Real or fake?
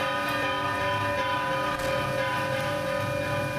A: real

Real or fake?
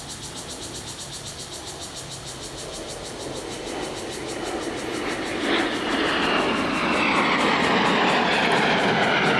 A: real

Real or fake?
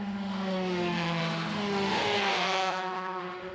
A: fake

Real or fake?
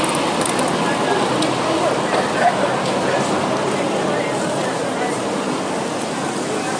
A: real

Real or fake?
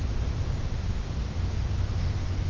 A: real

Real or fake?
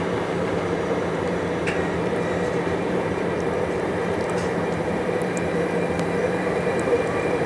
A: fake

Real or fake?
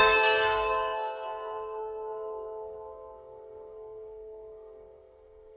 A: fake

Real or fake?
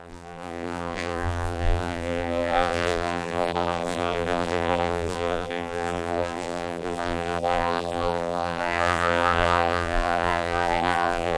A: fake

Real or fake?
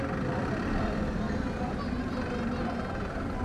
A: real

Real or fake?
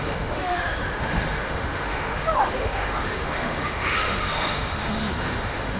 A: fake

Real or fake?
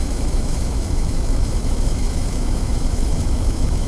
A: fake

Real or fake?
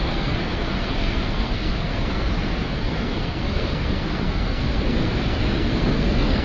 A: fake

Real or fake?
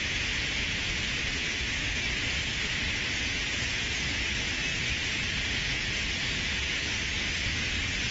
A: fake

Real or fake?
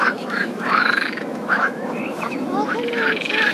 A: fake